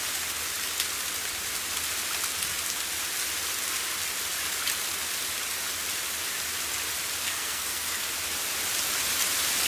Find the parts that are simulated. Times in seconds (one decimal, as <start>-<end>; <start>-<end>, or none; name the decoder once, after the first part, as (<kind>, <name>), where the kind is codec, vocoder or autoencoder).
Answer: 7.2-7.9 (codec, SNAC)